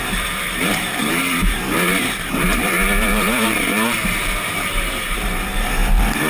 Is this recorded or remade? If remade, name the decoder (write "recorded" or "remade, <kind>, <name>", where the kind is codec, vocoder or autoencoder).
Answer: remade, vocoder, BigVGAN v2